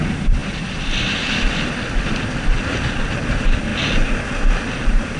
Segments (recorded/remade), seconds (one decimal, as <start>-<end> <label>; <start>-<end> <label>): 0.0-3.7 remade; 3.7-4.7 recorded; 4.7-5.2 remade